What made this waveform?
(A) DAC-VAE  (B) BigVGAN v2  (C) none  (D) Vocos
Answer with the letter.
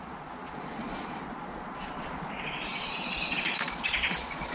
D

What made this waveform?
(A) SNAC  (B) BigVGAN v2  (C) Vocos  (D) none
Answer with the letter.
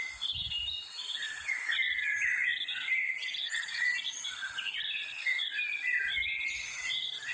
D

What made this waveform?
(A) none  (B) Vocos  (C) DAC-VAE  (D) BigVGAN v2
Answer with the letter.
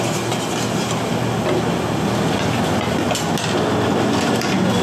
A